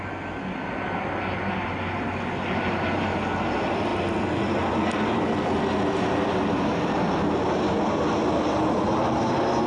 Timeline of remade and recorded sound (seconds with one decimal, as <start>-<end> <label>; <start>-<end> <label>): 0.0-9.7 recorded